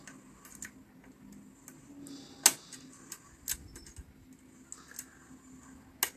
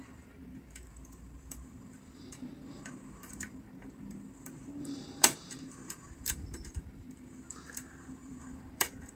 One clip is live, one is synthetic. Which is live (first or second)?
first